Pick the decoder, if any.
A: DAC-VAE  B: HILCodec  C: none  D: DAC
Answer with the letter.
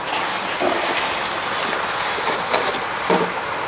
C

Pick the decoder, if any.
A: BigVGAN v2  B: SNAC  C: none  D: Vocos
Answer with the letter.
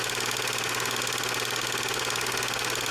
C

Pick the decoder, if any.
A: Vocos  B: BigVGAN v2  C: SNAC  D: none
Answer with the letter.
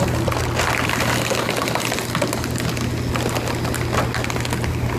D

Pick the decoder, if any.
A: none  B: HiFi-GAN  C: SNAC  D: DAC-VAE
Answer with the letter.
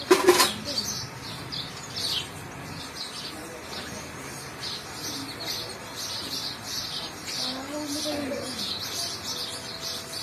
A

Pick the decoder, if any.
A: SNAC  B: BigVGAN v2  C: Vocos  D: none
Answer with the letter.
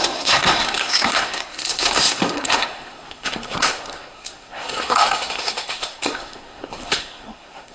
A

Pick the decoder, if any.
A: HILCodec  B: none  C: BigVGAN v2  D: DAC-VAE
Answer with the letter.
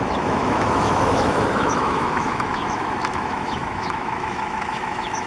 D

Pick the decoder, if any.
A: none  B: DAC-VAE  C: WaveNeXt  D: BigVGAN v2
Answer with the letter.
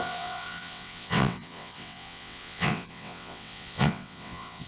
C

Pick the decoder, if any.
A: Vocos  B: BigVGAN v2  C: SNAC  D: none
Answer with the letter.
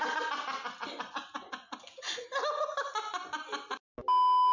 D